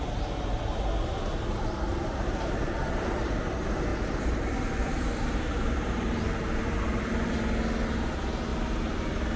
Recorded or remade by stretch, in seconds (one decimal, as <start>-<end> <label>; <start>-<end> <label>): 0.0-1.9 recorded; 1.9-3.4 remade; 3.4-3.9 recorded; 3.9-7.0 remade; 7.0-9.4 recorded

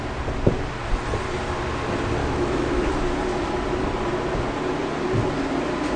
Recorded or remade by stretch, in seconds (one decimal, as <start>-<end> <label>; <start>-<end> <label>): 0.0-2.2 recorded; 2.2-2.9 remade; 2.9-6.0 recorded

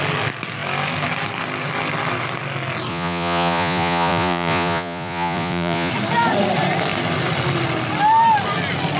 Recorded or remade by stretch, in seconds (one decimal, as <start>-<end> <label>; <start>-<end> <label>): 0.0-2.9 recorded; 2.9-5.9 remade; 5.9-9.0 recorded